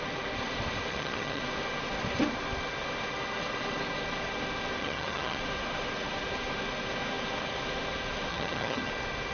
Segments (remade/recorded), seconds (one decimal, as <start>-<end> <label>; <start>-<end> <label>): 0.0-0.9 recorded; 0.9-1.4 remade; 1.4-4.8 recorded; 4.8-5.4 remade; 5.4-8.3 recorded; 8.3-8.9 remade; 8.9-9.3 recorded